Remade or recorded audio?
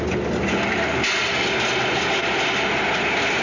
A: recorded